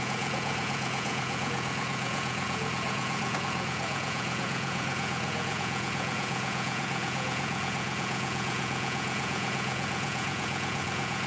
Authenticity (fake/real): fake